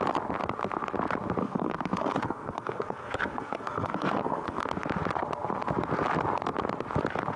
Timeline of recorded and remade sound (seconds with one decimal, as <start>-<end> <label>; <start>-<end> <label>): 0.0-1.4 recorded; 1.4-4.6 remade; 4.6-7.4 recorded